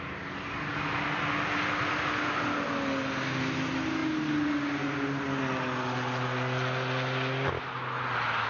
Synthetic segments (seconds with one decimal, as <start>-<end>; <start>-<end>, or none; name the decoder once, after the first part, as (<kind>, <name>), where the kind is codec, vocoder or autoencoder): none